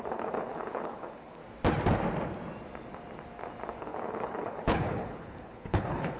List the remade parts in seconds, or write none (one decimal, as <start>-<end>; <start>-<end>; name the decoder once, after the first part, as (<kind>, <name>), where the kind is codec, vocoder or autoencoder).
0.0-1.4 (codec, HILCodec); 3.8-6.2